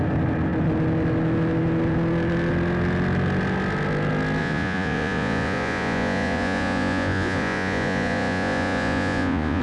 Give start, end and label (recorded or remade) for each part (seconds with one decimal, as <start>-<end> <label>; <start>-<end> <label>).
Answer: 0.0-4.4 recorded; 4.4-9.6 remade